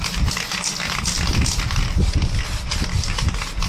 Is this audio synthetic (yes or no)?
no